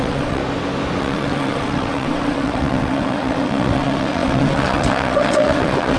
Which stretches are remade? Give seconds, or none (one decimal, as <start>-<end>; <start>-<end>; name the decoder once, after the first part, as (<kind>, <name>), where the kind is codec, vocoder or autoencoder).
0.0-0.4 (vocoder, WaveNeXt); 1.0-6.0

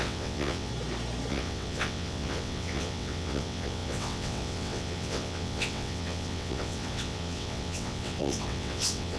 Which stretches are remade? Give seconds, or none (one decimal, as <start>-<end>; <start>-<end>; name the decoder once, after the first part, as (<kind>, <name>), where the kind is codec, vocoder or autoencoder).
0.0-0.7 (vocoder, WaveNeXt); 1.3-9.2

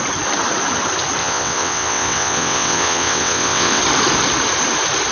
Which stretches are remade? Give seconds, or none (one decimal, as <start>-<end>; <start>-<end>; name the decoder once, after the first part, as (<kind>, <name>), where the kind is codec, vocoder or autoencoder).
1.2-3.8 (vocoder, WaveNeXt)

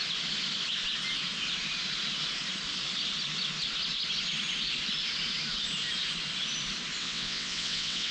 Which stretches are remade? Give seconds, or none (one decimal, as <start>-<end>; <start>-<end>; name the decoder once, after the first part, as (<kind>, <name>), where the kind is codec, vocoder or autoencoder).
7.0-8.1 (vocoder, WaveNeXt)

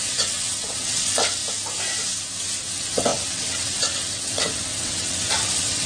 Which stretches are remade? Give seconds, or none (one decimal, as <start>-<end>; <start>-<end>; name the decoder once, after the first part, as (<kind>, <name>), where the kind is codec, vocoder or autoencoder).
0.0-1.4 (vocoder, WaveNeXt); 2.6-5.9